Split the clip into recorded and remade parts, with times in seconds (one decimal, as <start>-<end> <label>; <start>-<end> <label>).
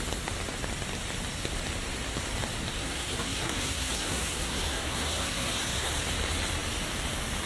0.0-2.8 recorded; 2.8-5.9 remade; 5.9-7.5 recorded